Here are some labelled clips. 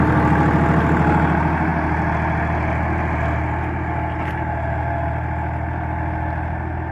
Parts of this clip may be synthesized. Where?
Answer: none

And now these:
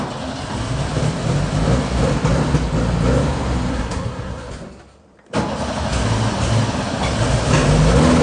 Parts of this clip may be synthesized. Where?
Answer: 3.7-4.5 (codec, SNAC)

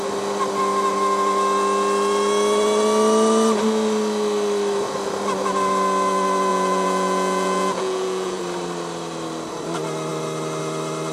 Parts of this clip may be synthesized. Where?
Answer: 6.5-8.4 (vocoder, Vocos)

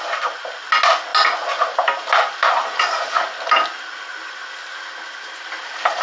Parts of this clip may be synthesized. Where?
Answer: none

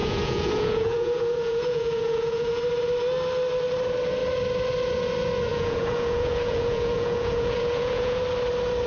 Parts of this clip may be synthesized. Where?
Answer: 0.0-2.6 (vocoder, Vocos); 5.5-8.2